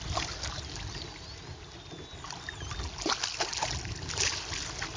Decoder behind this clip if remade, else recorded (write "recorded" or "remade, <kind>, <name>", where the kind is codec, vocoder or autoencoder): recorded